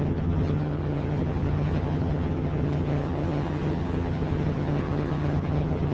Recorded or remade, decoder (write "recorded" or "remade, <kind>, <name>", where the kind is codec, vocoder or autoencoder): remade, vocoder, HiFi-GAN